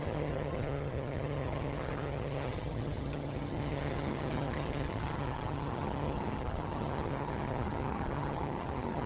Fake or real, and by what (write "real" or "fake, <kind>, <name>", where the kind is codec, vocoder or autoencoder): fake, vocoder, HiFi-GAN